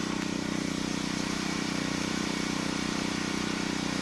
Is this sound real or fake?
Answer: fake